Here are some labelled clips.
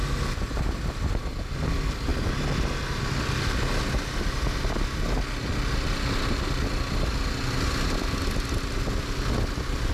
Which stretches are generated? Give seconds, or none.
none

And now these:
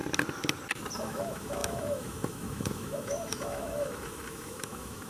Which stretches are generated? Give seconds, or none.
1.0-5.1 (autoencoder, DAC-VAE)

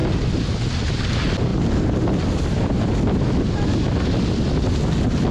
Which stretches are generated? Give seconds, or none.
none